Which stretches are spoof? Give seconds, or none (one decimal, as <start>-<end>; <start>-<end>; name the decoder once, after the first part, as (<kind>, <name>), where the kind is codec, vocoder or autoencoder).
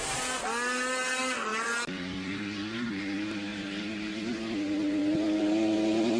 1.5-3.0 (vocoder, BigVGAN v2); 3.5-6.2